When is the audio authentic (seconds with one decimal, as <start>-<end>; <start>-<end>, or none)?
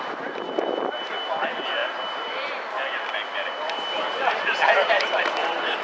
0.0-1.8; 5.3-5.8